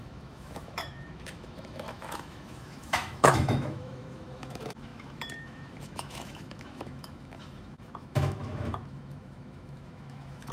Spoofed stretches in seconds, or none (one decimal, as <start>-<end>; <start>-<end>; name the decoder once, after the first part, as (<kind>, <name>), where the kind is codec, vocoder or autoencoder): 0.0-10.5 (autoencoder, DAC-VAE)